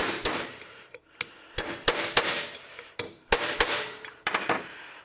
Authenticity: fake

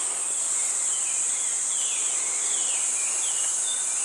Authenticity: real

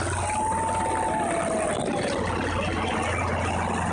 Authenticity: real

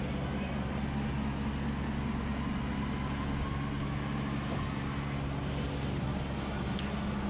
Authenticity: real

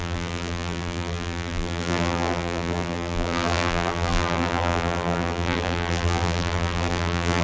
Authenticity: fake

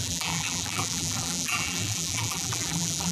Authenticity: fake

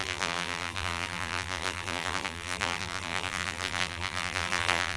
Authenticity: fake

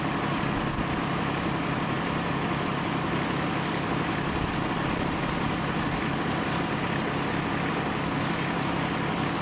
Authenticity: real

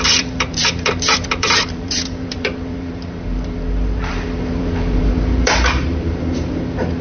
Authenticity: fake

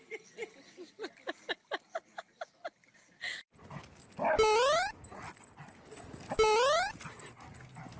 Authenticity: real